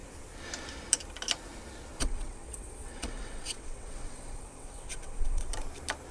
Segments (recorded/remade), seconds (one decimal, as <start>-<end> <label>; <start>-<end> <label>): 0.0-2.0 recorded; 2.0-5.5 remade; 5.5-6.1 recorded